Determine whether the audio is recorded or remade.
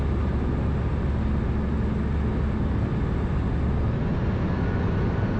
recorded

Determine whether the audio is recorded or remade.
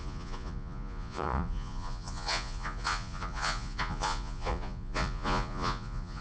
remade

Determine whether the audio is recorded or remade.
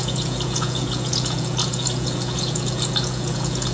remade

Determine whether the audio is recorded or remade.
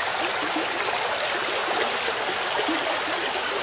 recorded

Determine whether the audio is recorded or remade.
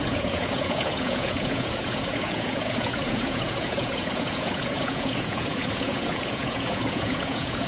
remade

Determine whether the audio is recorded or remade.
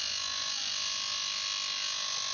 recorded